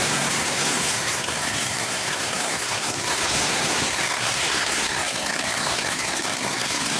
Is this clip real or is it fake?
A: fake